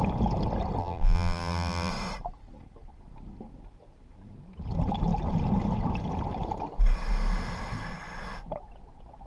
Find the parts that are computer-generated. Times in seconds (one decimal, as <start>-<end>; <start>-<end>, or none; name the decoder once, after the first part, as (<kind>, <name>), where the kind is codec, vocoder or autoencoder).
0.8-1.9 (vocoder, BigVGAN v2)